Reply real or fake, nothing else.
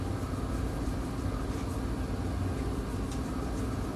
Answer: real